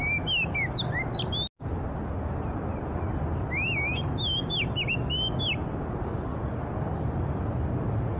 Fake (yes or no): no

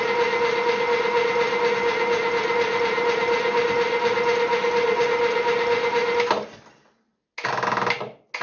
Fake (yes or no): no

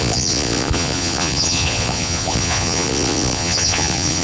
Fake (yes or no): yes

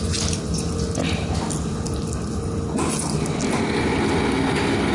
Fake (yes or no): no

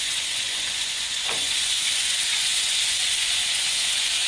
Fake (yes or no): yes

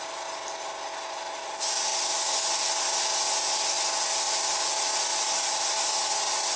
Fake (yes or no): no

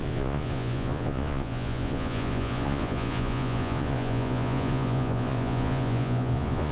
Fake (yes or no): yes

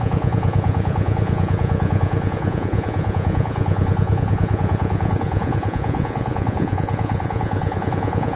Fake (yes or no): yes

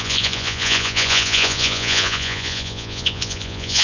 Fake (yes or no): yes